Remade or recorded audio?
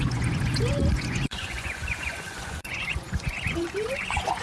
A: remade